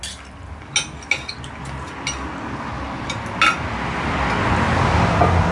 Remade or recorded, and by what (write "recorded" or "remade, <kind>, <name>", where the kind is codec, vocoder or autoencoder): recorded